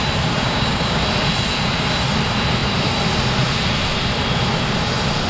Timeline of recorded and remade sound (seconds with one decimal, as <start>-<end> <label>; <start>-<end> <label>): 0.0-0.4 recorded; 0.4-1.0 remade; 1.0-5.3 recorded